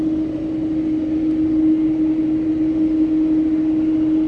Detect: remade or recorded recorded